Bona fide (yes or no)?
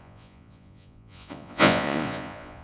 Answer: no